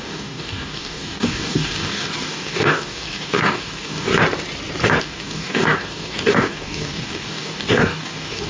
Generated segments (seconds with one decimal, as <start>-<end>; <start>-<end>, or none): 0.0-4.1; 5.0-8.5